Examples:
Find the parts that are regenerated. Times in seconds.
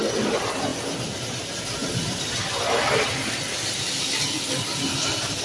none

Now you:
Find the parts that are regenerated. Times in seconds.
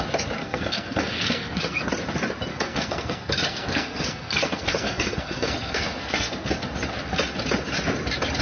0.4-1.9 (codec, SNAC); 2.5-6.5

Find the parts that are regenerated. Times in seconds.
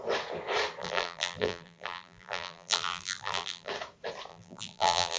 0.8-3.7 (vocoder, BigVGAN v2); 4.3-5.2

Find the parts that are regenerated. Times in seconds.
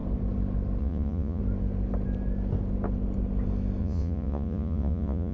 0.8-1.4 (vocoder, Vocos); 3.8-5.3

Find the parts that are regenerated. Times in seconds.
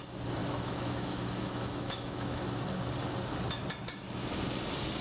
0.4-2.4 (autoencoder, DAC-VAE)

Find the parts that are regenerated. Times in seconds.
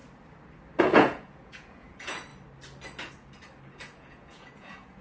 0.8-2.3 (vocoder, Vocos); 3.8-5.0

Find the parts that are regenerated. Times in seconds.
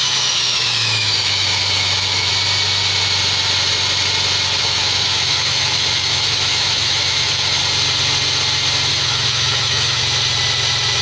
0.0-2.3 (autoencoder, DAC-VAE); 4.6-7.6; 8.9-10.0